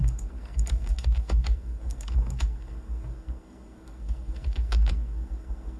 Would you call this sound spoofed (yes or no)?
yes